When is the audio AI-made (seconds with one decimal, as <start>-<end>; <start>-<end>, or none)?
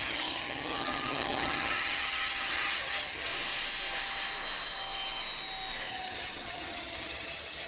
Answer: 0.0-3.3; 5.9-7.7